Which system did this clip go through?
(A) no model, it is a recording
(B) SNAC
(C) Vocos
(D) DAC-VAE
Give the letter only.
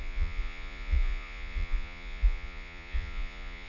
C